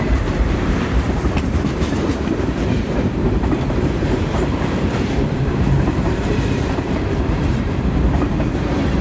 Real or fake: fake